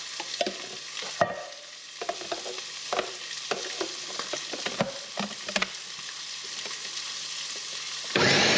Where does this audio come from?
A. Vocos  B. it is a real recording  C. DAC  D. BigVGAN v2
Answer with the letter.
B